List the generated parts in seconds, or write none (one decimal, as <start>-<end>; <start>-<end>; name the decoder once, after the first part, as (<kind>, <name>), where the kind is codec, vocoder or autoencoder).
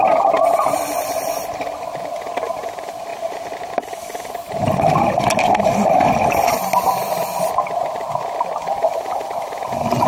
none